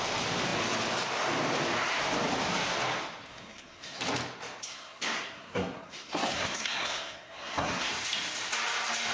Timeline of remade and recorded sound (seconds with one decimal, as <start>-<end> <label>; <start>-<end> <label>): 0.0-3.3 recorded; 3.3-4.0 remade; 4.0-4.6 recorded; 4.6-7.9 remade; 7.9-9.1 recorded